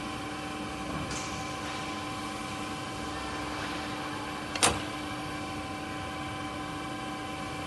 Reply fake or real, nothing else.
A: real